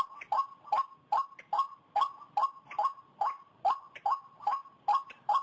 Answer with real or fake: real